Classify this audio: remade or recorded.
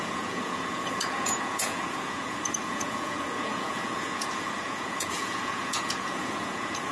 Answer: remade